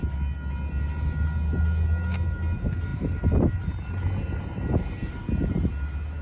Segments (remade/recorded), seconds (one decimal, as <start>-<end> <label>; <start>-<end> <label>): 0.0-6.2 recorded